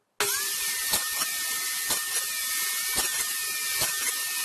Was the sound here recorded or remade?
recorded